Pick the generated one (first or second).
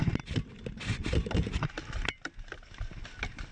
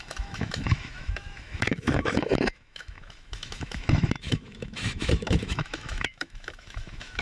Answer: second